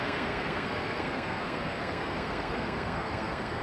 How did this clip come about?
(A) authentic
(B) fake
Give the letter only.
B